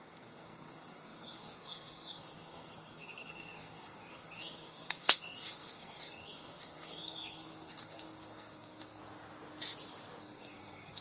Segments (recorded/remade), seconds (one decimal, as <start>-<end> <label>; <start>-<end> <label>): 0.0-9.0 remade; 9.0-10.2 recorded; 10.2-11.0 remade